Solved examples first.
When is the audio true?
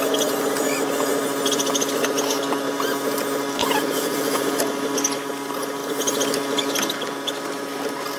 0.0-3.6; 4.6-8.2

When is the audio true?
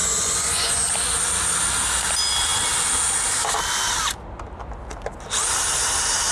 0.9-6.3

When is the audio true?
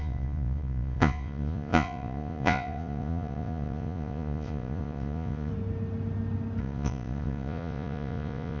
5.5-6.6